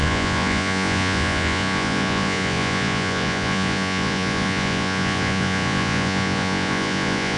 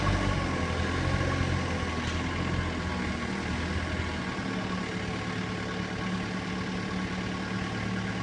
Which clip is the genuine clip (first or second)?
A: second